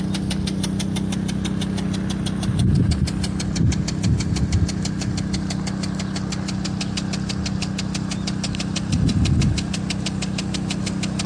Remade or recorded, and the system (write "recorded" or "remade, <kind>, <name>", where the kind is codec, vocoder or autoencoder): recorded